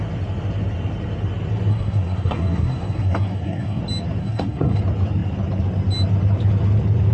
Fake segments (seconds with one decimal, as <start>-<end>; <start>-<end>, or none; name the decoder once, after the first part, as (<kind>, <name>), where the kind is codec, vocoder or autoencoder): 1.7-3.8 (codec, SNAC); 4.2-4.8